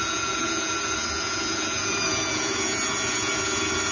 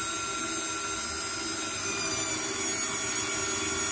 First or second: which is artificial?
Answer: first